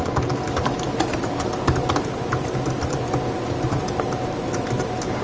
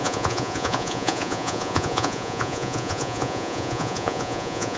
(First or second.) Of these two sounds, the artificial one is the second